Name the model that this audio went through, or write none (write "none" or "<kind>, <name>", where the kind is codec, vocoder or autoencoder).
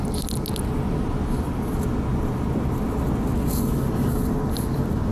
none